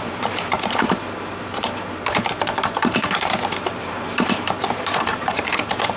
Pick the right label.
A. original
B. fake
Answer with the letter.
B